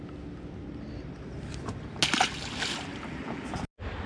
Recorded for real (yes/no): yes